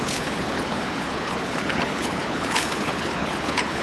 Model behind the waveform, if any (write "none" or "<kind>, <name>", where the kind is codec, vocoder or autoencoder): codec, HILCodec